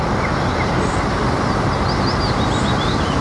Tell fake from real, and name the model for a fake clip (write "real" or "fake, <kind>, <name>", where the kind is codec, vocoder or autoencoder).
real